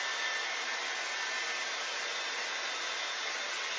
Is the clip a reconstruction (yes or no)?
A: no